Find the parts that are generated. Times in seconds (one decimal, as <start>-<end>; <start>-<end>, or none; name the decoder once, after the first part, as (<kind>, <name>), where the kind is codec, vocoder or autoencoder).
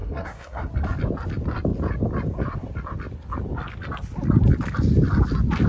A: 0.0-0.7 (codec, SNAC)